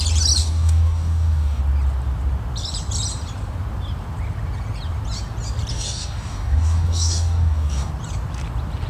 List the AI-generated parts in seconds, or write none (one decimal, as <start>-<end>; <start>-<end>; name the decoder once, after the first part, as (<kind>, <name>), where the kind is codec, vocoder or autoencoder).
0.4-1.6 (codec, DAC); 5.7-7.9